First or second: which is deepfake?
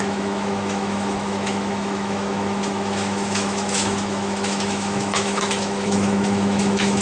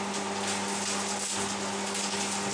first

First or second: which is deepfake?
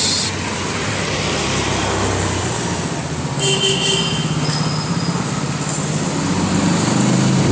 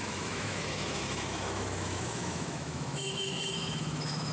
second